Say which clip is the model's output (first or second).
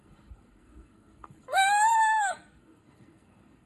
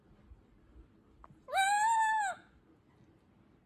first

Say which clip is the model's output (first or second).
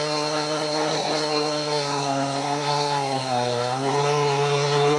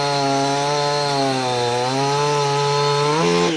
first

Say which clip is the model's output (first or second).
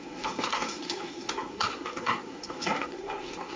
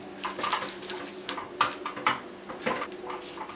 first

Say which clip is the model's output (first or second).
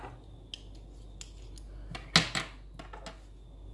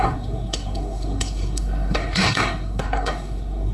second